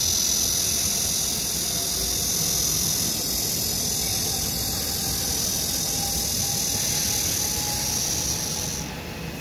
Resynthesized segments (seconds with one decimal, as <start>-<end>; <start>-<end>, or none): none